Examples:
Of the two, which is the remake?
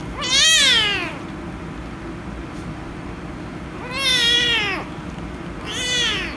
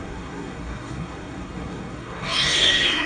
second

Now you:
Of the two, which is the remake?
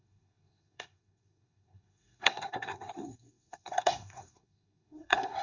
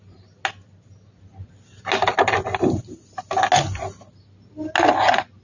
first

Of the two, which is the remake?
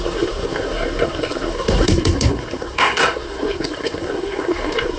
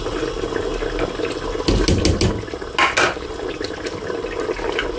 first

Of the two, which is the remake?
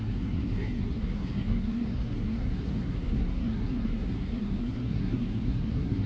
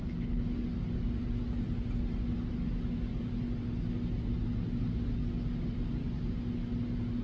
first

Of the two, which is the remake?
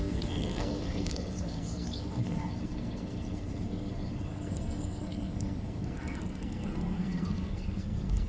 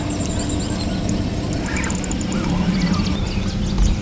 first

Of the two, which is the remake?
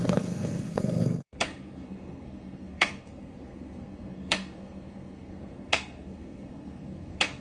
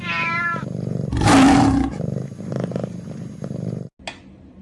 first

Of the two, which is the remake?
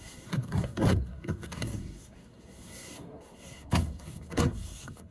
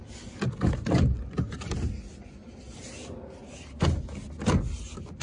first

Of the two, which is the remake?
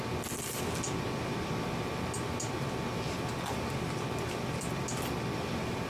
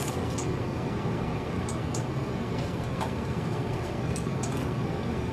second